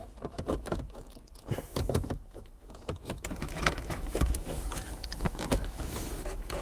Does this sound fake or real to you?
fake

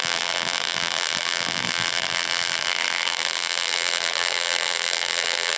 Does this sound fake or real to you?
fake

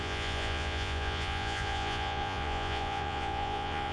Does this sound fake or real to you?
fake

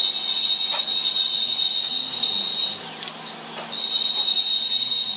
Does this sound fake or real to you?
real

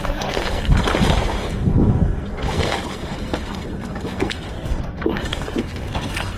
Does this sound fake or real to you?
fake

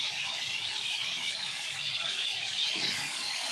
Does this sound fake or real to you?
fake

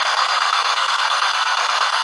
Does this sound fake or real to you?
fake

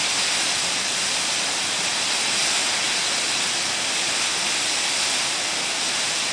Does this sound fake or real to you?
real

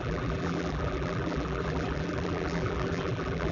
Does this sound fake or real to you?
fake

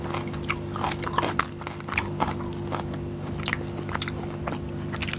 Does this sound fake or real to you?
real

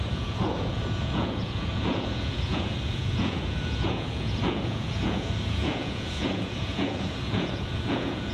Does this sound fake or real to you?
fake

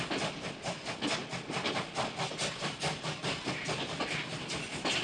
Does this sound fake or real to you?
real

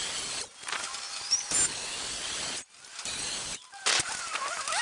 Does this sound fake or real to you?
real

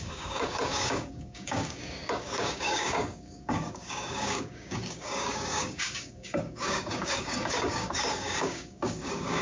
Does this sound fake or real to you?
fake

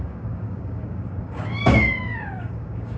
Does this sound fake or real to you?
fake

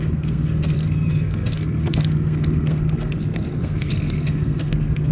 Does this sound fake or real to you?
fake